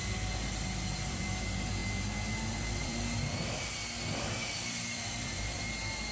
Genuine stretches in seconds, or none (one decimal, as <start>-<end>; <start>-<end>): 1.8-2.8